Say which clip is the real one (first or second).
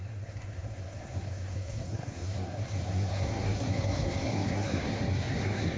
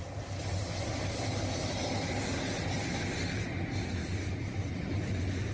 second